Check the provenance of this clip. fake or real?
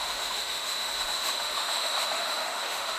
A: fake